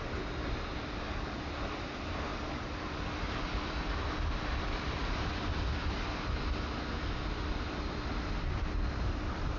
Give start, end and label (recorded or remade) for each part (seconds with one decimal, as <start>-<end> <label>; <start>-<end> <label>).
0.0-9.6 recorded